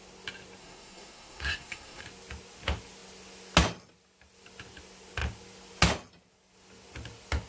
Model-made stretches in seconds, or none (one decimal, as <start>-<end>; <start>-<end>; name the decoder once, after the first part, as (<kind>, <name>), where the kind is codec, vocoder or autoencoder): 0.6-2.0 (codec, SNAC)